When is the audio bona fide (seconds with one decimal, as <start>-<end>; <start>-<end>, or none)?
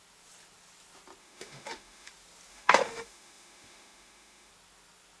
0.0-1.2; 2.1-2.5; 4.5-5.2